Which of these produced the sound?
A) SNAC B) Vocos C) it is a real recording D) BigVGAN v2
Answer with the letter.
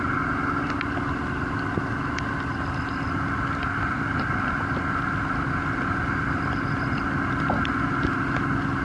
C